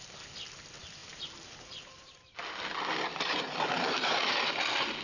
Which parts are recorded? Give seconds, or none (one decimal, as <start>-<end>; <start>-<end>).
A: 0.0-1.0; 2.1-3.1; 4.6-5.0